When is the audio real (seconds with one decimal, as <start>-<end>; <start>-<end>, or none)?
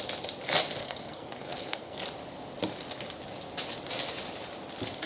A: 0.0-0.8; 2.0-5.1